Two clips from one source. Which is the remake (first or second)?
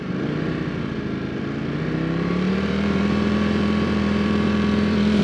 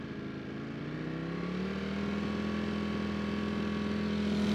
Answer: first